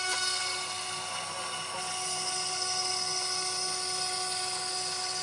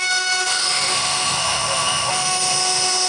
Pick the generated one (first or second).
second